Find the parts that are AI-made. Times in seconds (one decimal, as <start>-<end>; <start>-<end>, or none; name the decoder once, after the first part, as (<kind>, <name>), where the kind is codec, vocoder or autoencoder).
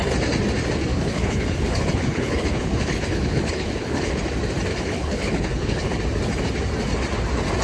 0.9-4.2 (codec, HILCodec); 4.7-6.0